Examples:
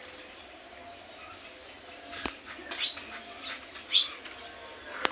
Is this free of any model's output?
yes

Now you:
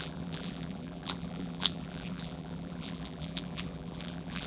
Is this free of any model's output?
no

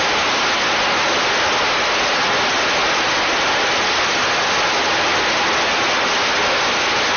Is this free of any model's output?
yes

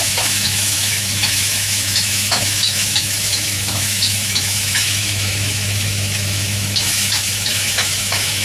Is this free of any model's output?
no